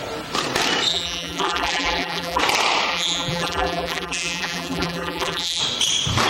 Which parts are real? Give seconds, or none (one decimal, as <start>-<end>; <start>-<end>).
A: 0.0-0.9; 2.4-2.9; 5.6-6.3